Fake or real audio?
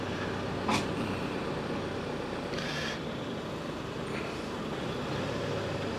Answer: real